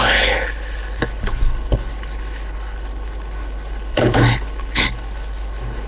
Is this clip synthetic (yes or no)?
yes